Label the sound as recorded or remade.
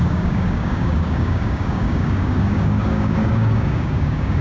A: remade